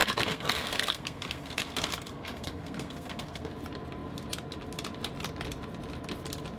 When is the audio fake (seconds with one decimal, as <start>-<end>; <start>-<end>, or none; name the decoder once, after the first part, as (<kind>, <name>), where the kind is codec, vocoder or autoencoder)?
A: 0.0-3.5 (codec, SNAC)